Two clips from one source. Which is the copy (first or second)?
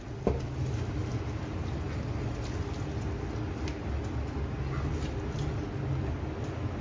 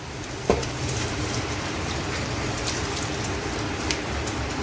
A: second